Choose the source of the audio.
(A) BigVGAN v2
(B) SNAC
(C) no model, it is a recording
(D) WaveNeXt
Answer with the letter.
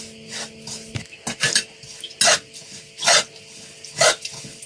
C